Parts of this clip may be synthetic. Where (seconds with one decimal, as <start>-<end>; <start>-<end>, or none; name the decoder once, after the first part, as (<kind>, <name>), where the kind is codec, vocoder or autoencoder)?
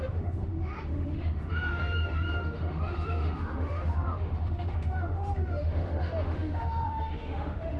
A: 0.0-7.8 (autoencoder, DAC-VAE)